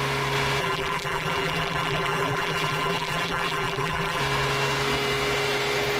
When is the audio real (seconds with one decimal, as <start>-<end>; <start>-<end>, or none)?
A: 0.0-0.6; 4.2-6.0